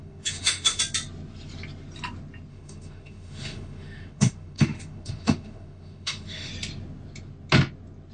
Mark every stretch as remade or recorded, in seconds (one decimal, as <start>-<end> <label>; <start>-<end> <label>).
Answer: 0.0-0.8 remade; 0.8-2.5 recorded; 2.5-6.5 remade; 6.5-8.1 recorded